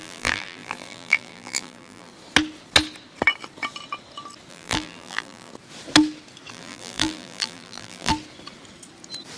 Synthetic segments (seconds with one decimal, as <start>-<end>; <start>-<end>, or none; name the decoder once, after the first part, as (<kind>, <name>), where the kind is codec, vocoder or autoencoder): 0.0-2.1 (vocoder, BigVGAN v2); 4.5-5.5; 6.5-8.1